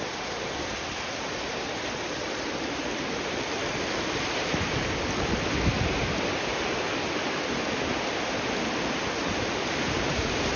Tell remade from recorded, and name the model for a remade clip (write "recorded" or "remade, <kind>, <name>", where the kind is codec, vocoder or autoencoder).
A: recorded